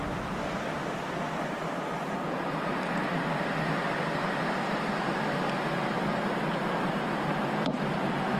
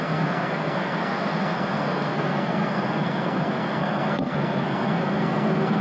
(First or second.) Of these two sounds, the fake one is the second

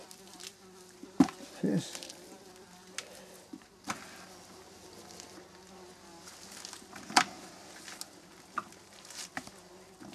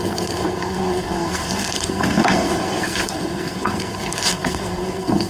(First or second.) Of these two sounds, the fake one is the second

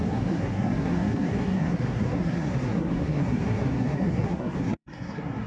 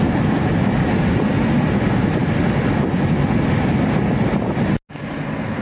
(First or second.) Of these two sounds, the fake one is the first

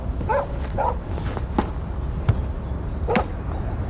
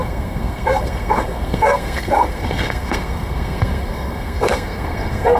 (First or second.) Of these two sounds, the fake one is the second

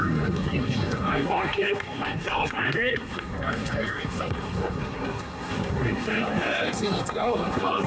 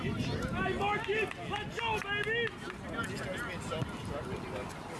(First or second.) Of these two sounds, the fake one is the first